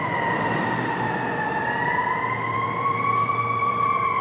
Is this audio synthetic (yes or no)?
yes